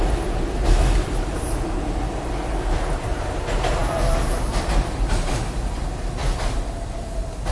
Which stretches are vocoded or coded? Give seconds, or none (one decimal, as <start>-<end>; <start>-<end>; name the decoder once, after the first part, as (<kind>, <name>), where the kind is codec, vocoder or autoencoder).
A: none